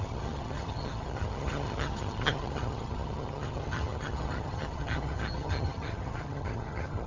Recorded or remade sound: remade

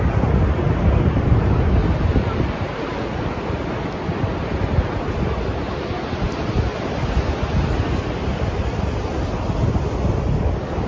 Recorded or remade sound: recorded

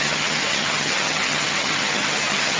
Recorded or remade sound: remade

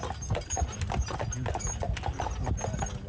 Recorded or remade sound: recorded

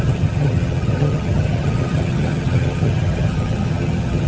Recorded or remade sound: remade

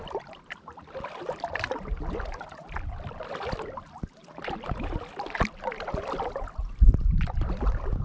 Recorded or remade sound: recorded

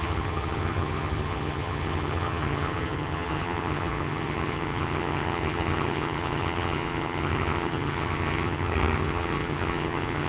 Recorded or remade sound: remade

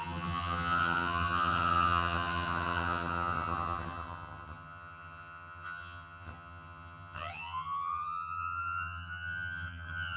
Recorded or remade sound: remade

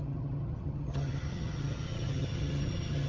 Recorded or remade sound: remade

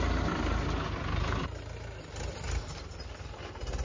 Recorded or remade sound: recorded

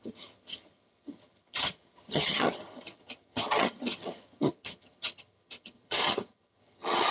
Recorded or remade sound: remade